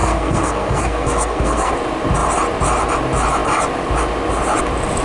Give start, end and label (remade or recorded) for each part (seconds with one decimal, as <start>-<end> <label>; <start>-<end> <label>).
0.0-1.7 remade; 1.7-5.0 recorded